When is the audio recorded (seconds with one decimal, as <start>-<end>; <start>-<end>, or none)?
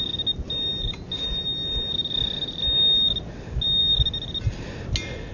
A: 0.0-5.3